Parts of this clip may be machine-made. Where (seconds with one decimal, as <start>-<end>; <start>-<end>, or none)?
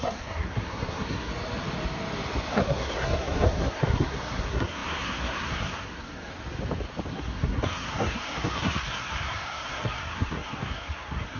0.0-1.3; 2.5-6.3; 7.1-11.4